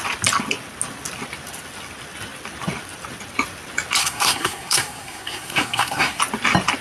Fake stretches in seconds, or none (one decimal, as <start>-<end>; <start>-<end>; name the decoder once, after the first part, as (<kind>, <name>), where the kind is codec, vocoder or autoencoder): 4.0-6.2 (codec, SNAC)